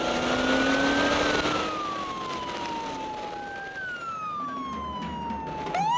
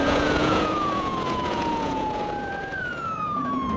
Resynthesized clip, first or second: second